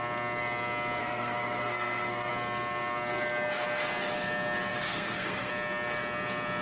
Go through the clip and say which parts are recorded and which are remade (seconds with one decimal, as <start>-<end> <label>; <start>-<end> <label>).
0.0-1.0 recorded; 1.0-2.3 remade; 2.3-4.7 recorded; 4.7-5.5 remade; 5.5-6.6 recorded